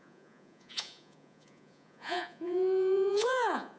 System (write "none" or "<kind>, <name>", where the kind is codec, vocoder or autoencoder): vocoder, Vocos